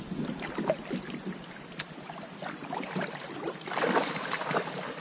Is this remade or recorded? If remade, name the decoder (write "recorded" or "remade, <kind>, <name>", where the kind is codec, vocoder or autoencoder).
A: remade, vocoder, BigVGAN v2